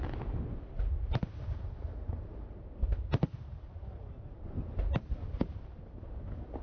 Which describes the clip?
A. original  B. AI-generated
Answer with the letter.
A